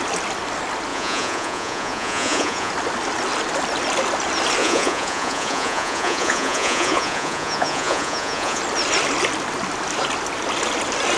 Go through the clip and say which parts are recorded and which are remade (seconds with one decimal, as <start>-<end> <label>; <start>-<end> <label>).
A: 0.0-0.9 recorded; 0.9-2.7 remade; 2.7-4.6 recorded; 4.6-8.6 remade; 8.6-11.2 recorded